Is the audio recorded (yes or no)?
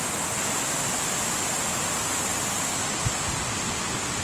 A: yes